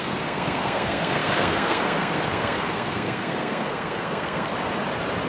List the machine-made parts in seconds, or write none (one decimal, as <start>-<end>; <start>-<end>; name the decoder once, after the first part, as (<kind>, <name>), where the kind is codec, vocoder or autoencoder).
0.0-4.5 (codec, SNAC)